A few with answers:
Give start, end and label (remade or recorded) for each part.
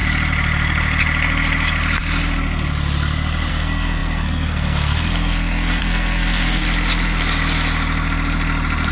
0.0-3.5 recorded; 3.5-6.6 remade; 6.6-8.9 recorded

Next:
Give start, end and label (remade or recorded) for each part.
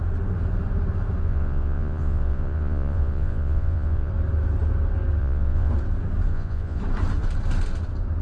0.0-1.2 recorded; 1.2-4.1 remade; 4.1-5.2 recorded; 5.2-5.7 remade; 5.7-6.3 recorded; 6.3-6.8 remade; 6.8-8.2 recorded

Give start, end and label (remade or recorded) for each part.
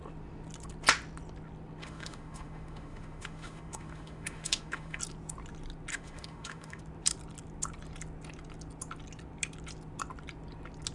0.0-1.8 recorded; 1.8-5.0 remade; 5.0-5.9 recorded; 5.9-6.8 remade; 6.8-10.9 recorded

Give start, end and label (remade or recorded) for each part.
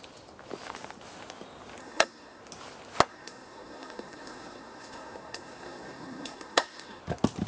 0.0-1.8 recorded; 1.8-2.4 remade; 2.4-3.1 recorded; 3.1-7.0 remade; 7.0-7.5 recorded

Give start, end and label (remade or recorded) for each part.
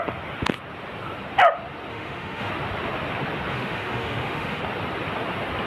0.0-1.9 recorded; 1.9-2.5 remade; 2.5-3.5 recorded; 3.5-4.6 remade; 4.6-5.7 recorded